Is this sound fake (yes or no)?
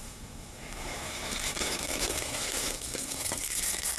yes